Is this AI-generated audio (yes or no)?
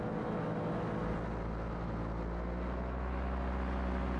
no